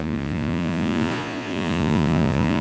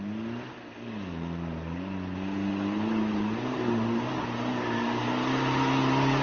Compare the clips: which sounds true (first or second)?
second